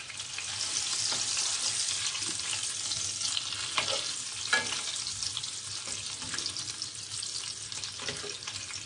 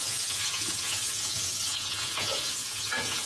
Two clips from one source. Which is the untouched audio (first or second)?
first